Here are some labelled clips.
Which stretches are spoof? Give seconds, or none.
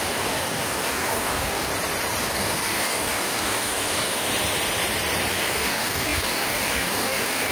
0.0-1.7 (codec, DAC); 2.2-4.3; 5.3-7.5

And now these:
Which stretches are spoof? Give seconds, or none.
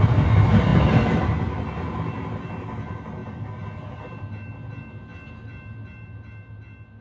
none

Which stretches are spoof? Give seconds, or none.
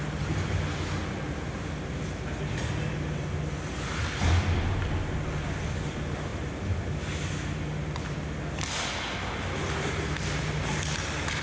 none